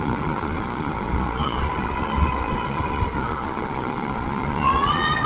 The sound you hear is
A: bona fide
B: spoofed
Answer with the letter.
B